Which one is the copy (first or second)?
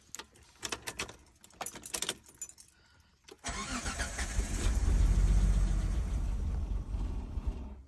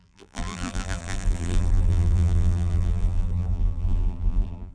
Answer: second